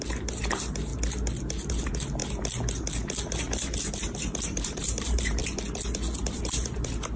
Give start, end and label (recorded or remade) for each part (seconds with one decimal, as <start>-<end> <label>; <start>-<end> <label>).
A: 0.0-0.9 remade; 0.9-1.7 recorded; 1.7-2.2 remade; 2.2-3.9 recorded; 3.9-5.4 remade; 5.4-6.2 recorded; 6.2-7.2 remade